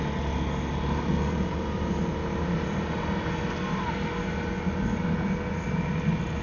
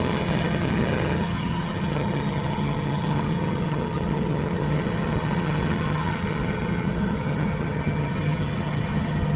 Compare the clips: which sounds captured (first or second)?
first